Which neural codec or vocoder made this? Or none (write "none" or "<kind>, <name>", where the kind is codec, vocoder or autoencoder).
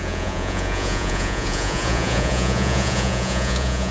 vocoder, Vocos